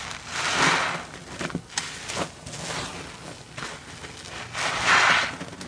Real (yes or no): yes